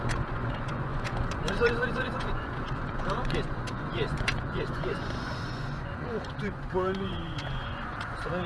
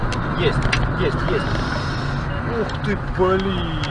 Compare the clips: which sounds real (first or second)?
second